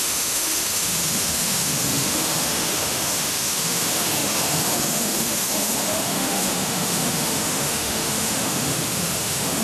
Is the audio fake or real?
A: fake